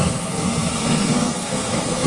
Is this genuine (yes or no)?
no